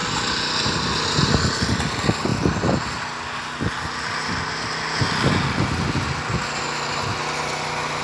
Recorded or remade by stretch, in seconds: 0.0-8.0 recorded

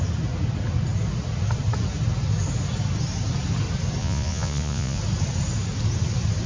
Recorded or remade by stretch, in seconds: 0.0-4.0 recorded; 4.0-5.0 remade; 5.0-6.5 recorded

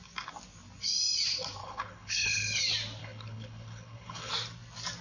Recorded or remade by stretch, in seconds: 0.0-1.6 recorded; 1.6-2.6 remade; 2.6-3.0 recorded; 3.0-4.3 remade; 4.3-5.0 recorded

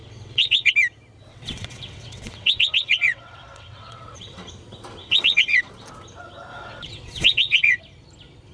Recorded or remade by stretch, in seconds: 0.0-0.7 remade; 0.7-1.3 recorded; 1.3-4.5 remade; 4.5-5.0 recorded; 5.0-5.7 remade; 5.7-6.5 recorded; 6.5-7.8 remade; 7.8-8.5 recorded

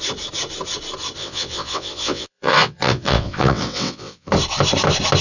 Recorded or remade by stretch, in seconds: 0.0-1.2 recorded; 1.2-4.3 remade; 4.3-5.2 recorded

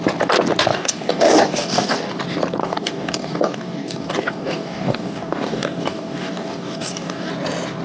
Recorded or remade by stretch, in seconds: 0.0-0.7 recorded; 0.7-2.2 remade; 2.2-2.6 recorded; 2.6-7.3 remade; 7.3-7.8 recorded

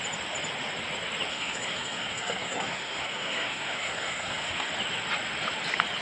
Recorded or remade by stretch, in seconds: 0.0-1.3 recorded; 1.3-4.7 remade; 4.7-6.0 recorded

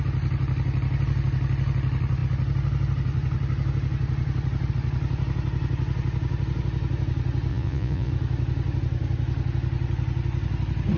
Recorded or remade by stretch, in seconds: 0.0-7.5 recorded; 7.5-8.1 remade; 8.1-11.0 recorded